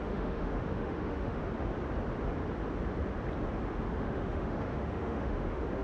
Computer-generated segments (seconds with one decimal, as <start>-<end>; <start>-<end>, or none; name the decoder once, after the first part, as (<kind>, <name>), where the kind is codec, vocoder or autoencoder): 0.0-1.4 (autoencoder, DAC-VAE); 4.0-5.8